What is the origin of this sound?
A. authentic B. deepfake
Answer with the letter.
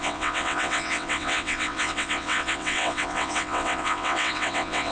B